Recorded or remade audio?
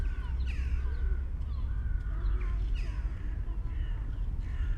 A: recorded